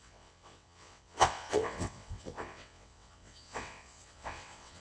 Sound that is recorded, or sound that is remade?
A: remade